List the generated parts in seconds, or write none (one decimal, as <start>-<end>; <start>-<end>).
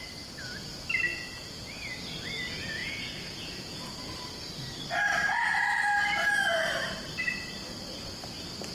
1.1-2.0; 2.8-4.2